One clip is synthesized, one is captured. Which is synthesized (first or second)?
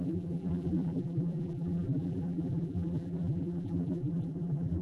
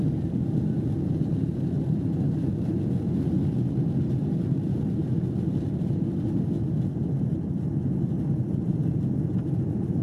first